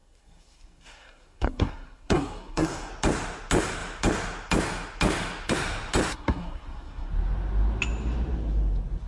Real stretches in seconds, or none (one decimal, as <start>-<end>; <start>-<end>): 2.9-6.1; 7.1-9.1